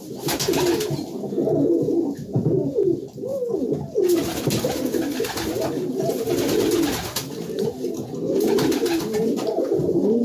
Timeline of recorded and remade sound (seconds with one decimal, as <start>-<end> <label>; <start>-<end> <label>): 0.0-10.2 recorded